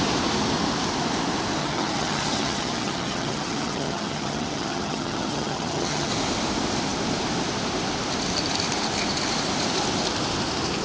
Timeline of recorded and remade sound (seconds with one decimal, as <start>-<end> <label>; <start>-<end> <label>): 0.0-1.6 recorded; 1.6-6.1 remade; 6.1-10.8 recorded